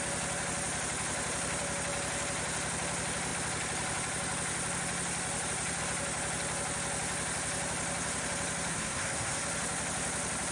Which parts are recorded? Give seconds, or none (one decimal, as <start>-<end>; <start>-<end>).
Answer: 0.0-8.7; 9.4-10.5